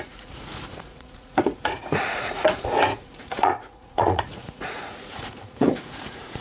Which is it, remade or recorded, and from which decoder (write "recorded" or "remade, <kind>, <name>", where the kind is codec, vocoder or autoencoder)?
remade, vocoder, Vocos